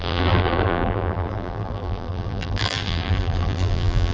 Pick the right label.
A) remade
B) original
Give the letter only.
A